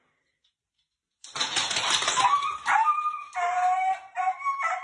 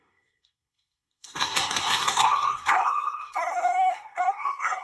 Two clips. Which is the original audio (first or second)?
first